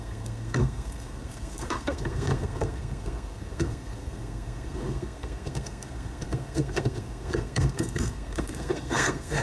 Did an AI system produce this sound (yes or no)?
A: yes